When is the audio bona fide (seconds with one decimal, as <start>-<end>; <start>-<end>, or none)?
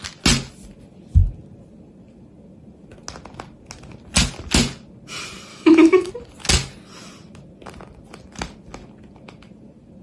0.0-5.5; 6.1-10.0